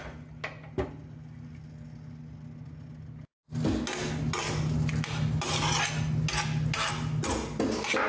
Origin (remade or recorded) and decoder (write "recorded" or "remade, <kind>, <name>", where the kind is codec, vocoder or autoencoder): recorded